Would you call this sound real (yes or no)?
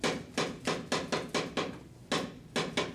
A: yes